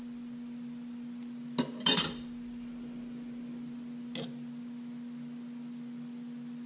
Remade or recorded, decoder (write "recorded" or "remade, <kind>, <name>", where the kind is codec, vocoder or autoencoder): recorded